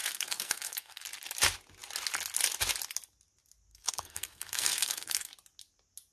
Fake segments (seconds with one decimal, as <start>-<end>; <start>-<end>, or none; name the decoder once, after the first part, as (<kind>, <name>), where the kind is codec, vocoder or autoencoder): 0.0-1.0 (codec, SNAC); 3.7-5.3